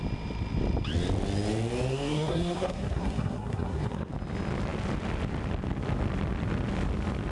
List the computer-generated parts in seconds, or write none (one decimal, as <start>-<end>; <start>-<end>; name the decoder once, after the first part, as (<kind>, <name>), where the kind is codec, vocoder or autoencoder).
1.9-4.1 (codec, SNAC)